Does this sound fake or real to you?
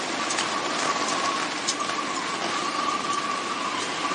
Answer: real